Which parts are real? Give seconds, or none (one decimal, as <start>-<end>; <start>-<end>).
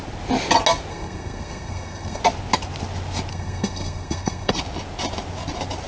0.0-0.9; 2.2-3.3; 4.5-5.9